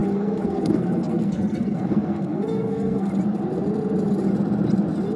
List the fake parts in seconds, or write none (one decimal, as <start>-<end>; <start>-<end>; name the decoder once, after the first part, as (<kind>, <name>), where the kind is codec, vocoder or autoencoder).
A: 0.0-3.1 (codec, SNAC)